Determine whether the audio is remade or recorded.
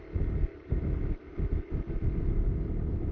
recorded